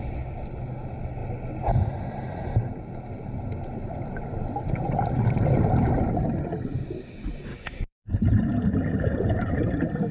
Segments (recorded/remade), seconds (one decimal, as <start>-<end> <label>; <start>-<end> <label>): 0.0-7.5 recorded; 7.5-8.1 remade; 8.1-10.1 recorded